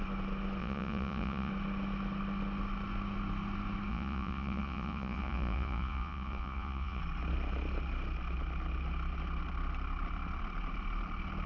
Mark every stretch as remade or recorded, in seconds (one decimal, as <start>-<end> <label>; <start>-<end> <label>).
0.0-0.6 recorded; 0.6-1.5 remade; 1.5-3.9 recorded; 3.9-7.0 remade; 7.0-11.5 recorded